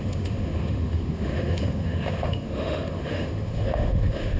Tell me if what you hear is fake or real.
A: fake